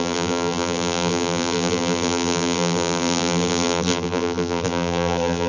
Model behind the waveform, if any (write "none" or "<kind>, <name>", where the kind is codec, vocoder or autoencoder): vocoder, BigVGAN v2